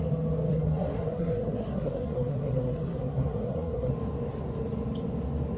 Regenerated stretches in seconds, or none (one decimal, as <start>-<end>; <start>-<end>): 0.5-3.9